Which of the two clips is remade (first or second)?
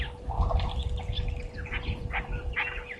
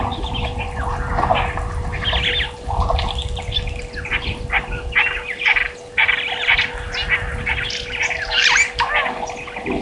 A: first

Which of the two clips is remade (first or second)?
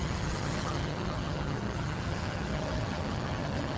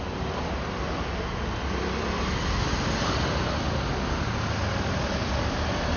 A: first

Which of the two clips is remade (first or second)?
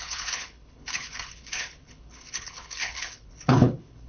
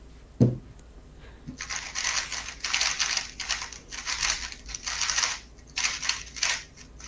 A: first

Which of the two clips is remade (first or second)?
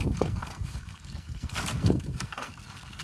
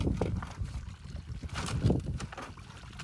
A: first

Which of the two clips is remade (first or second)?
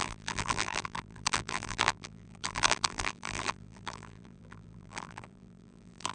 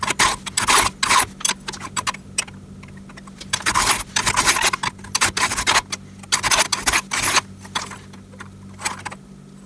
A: first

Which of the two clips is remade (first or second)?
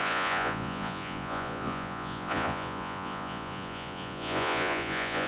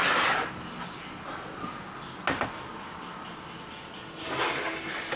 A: first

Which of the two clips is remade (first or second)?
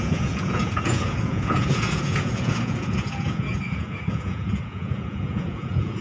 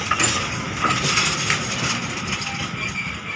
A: first